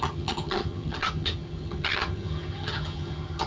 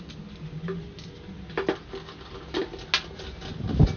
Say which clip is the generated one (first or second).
first